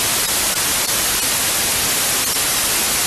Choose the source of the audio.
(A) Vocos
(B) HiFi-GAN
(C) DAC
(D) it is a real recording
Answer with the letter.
D